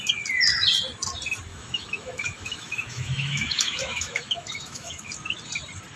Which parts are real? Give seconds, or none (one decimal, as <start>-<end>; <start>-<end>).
0.0-1.5; 5.1-6.0